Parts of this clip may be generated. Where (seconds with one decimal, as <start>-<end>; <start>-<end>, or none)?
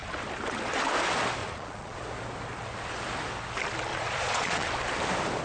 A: 1.4-2.0; 3.9-4.7